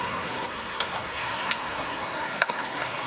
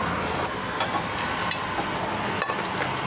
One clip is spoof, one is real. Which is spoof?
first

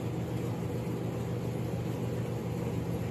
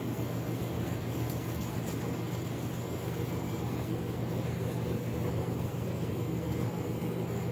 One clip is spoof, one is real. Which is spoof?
second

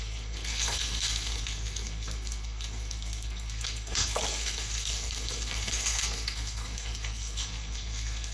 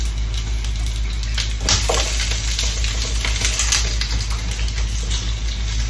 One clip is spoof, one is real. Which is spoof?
first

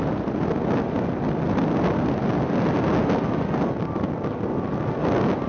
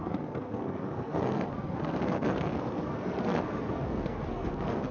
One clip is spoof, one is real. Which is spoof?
second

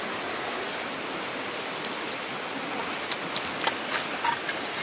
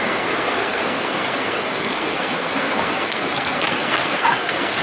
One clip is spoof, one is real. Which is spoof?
second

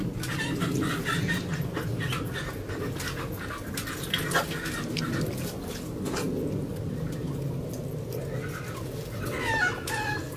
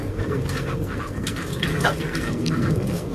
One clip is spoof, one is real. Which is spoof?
second